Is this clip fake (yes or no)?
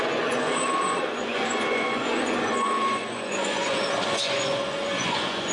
yes